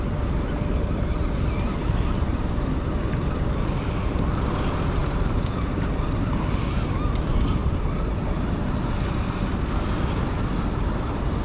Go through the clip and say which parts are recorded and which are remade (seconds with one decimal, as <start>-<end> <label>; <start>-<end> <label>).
0.0-5.0 recorded; 5.0-6.6 remade; 6.6-7.6 recorded; 7.6-8.6 remade; 8.6-11.4 recorded